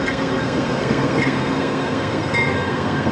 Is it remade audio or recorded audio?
remade